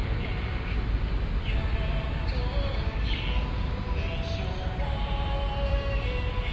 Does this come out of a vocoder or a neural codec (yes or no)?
no